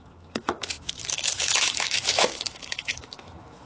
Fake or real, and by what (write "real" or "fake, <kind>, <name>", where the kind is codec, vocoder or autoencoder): fake, autoencoder, DAC-VAE